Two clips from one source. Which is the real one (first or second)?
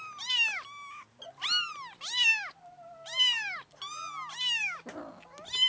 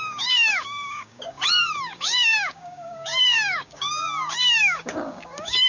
first